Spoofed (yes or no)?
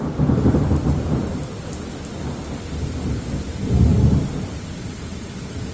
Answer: no